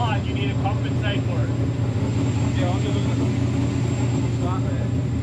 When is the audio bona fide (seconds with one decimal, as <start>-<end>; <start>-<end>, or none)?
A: 0.0-5.2